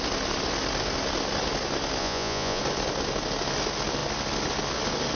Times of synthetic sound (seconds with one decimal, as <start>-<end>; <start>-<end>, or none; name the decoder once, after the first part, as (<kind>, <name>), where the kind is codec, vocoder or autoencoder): 2.0-2.6 (vocoder, Vocos)